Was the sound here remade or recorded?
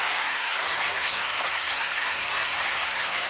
remade